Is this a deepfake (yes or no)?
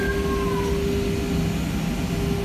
no